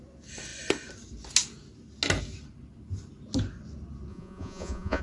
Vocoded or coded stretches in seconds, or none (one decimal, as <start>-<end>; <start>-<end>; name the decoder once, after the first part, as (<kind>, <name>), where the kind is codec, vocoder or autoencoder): 4.1-5.0 (vocoder, Vocos)